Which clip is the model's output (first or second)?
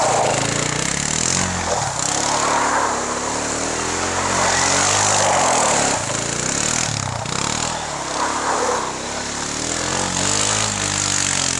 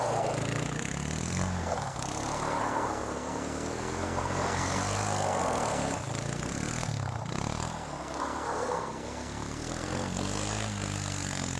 second